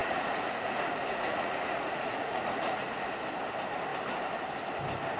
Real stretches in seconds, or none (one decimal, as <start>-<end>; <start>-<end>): 3.1-5.2